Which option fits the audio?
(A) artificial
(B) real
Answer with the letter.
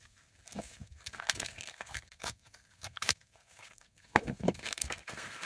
A